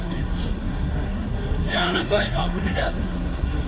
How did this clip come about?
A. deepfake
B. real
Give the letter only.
A